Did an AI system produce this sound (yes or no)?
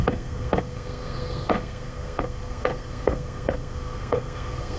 yes